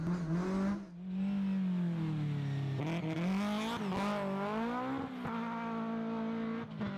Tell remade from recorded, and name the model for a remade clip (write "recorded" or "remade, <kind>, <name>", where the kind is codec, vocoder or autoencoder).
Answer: recorded